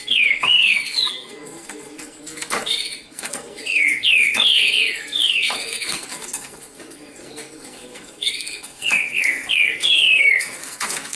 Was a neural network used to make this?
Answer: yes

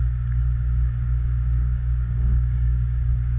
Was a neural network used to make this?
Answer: yes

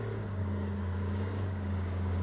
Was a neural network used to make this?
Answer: yes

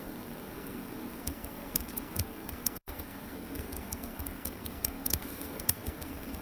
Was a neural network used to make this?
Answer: yes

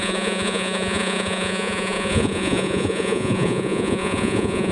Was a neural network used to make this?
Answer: yes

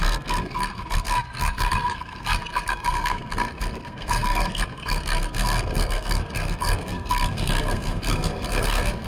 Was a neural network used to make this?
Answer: yes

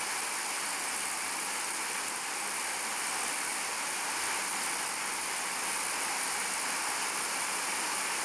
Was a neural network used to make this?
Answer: no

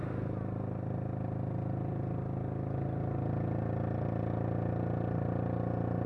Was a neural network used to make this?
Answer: no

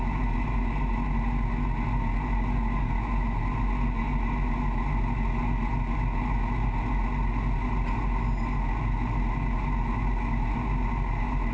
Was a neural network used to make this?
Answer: no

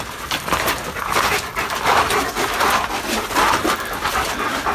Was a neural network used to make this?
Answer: no